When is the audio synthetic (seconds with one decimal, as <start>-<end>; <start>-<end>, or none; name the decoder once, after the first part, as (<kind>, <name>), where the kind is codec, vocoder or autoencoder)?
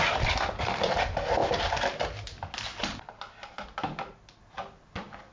none